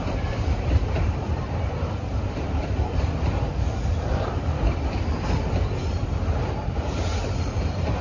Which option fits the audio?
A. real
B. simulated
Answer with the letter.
B